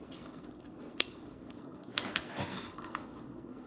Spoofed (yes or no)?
yes